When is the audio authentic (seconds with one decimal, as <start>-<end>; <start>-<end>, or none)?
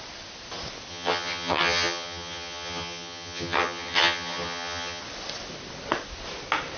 0.0-0.9; 5.0-6.8